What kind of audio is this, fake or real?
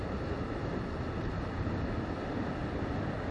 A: real